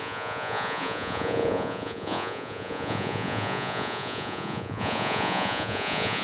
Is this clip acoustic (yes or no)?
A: no